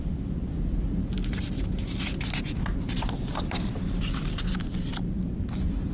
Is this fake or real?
fake